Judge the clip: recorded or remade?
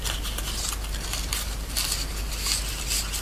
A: recorded